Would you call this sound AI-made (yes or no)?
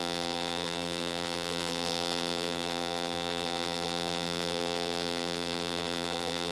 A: yes